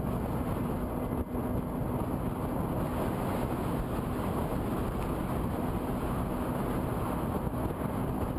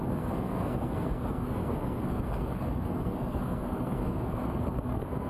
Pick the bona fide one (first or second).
first